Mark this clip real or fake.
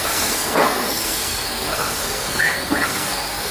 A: fake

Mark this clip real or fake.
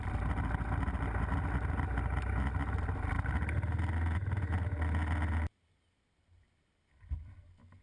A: real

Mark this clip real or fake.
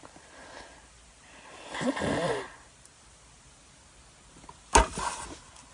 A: real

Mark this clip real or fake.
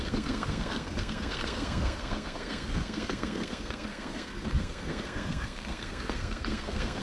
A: fake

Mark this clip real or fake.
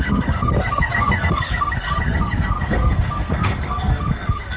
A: fake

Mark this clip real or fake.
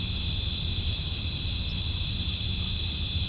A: real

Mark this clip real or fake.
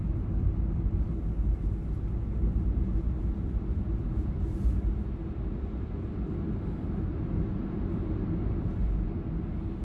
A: real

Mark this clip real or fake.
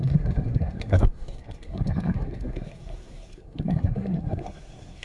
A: fake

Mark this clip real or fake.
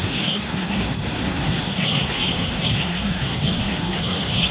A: fake